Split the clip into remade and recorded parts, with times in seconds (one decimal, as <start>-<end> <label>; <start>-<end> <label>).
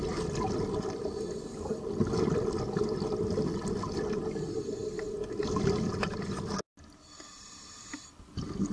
0.0-8.7 recorded